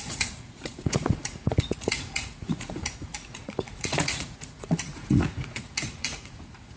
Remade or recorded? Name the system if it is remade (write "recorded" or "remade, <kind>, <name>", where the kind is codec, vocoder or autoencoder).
remade, vocoder, Vocos